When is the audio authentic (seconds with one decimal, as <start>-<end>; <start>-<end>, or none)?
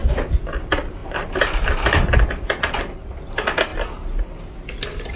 0.0-5.2